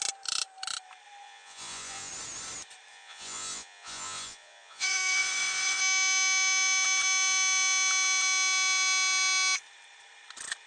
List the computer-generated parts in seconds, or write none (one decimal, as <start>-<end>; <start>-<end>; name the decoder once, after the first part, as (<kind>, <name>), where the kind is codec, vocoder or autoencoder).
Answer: 1.2-2.1 (vocoder, Vocos); 2.9-5.8